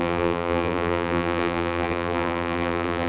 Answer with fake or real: fake